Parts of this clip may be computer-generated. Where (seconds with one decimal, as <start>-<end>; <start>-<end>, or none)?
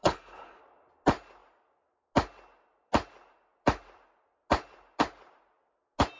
0.0-0.6